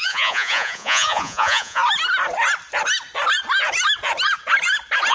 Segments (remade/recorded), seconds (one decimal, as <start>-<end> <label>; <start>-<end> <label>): 0.0-1.8 remade; 1.8-5.1 recorded